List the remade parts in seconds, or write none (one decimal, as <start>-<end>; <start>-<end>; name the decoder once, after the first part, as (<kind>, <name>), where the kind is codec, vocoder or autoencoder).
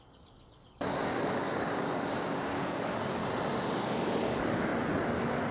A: 0.0-3.2 (codec, DAC); 3.7-5.5